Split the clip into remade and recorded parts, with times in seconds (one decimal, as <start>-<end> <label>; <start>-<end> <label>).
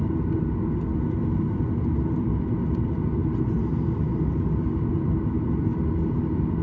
0.0-6.6 recorded